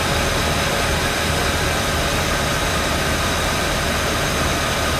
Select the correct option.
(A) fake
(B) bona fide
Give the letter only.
A